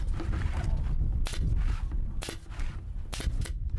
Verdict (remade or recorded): recorded